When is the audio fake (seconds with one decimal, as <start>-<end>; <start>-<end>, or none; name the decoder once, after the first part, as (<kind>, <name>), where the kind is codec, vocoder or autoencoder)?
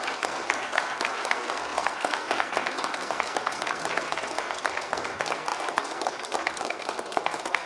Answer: 0.0-7.7 (codec, SNAC)